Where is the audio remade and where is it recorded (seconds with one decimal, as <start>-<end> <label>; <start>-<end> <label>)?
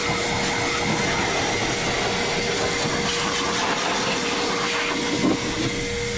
0.0-6.2 recorded